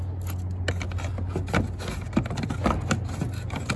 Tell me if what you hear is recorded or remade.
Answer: recorded